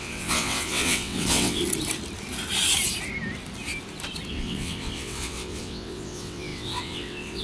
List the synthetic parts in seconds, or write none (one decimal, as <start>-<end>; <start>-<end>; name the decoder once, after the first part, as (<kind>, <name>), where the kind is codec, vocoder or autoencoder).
0.0-1.6 (vocoder, WaveNeXt); 4.3-7.4